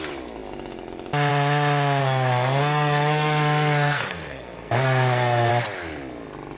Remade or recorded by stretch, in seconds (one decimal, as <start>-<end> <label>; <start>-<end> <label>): 0.0-2.0 recorded; 2.0-5.5 remade; 5.5-6.6 recorded